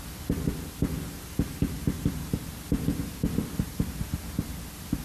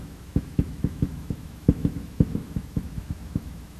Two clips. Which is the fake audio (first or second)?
second